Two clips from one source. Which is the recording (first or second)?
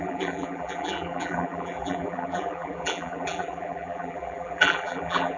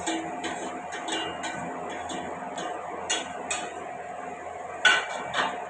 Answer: second